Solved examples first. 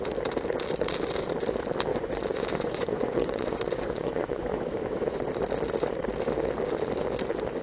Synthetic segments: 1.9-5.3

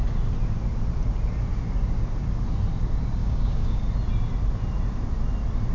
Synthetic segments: 3.2-3.8

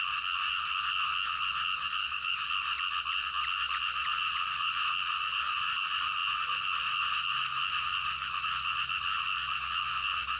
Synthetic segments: 2.0-2.5

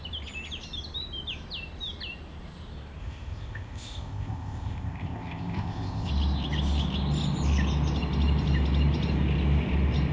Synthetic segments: 3.0-6.1

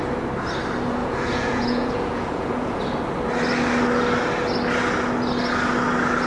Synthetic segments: 1.0-2.8

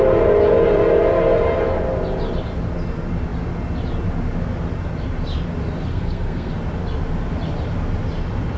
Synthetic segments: 5.9-6.5

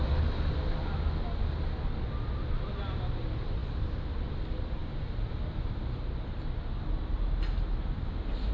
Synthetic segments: none

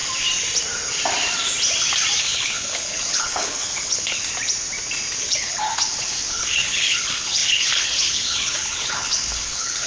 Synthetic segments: 2.2-4.2; 5.2-9.9